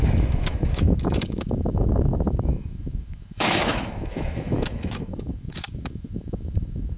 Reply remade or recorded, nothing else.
remade